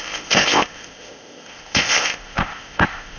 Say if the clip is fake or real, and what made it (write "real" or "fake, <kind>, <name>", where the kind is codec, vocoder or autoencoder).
fake, codec, ZipCodec